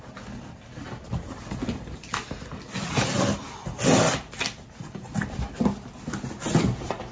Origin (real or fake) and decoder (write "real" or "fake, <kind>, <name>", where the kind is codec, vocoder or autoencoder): real